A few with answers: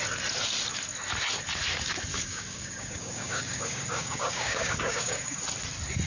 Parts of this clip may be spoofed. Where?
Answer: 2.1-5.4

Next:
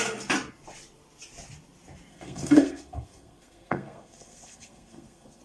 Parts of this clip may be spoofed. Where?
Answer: 2.1-5.4

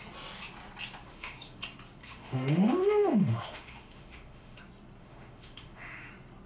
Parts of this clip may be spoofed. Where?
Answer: 1.1-1.6; 2.0-4.6; 5.0-6.1

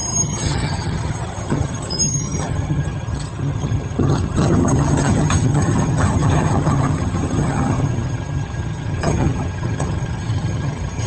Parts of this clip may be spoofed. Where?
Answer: 0.0-11.1

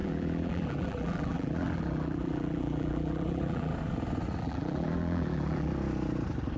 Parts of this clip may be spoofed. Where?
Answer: 0.0-3.7; 4.4-5.7

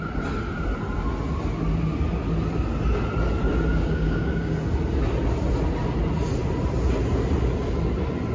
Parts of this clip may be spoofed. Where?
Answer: 3.7-4.5